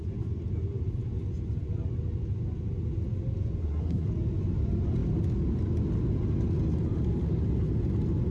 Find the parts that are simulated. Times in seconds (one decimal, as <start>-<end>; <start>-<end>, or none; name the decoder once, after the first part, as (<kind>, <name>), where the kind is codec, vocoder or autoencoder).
3.6-4.1 (codec, SNAC)